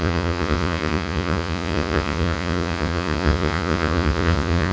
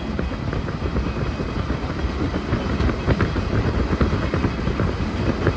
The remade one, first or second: first